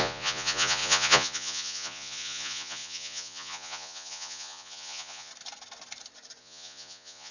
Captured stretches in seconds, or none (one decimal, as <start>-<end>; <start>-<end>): 5.3-6.4